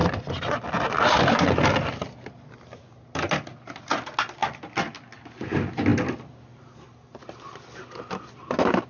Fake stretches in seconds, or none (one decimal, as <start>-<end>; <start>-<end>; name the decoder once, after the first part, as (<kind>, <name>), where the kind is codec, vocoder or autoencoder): none